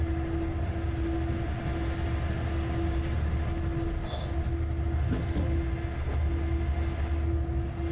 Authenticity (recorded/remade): recorded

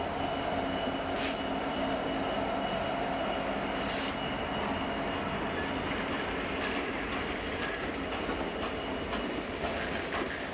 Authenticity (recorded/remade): recorded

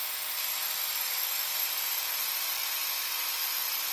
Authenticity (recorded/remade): recorded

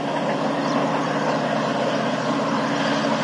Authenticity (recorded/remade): recorded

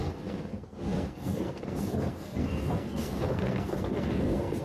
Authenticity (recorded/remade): remade